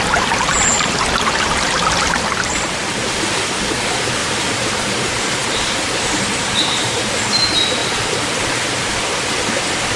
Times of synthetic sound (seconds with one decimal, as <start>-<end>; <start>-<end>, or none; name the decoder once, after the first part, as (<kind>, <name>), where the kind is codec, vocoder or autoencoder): 4.2-7.1 (vocoder, BigVGAN v2); 7.8-8.4